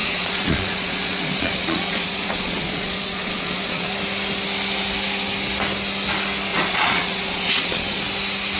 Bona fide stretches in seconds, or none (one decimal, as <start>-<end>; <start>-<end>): 3.9-6.5; 8.0-8.6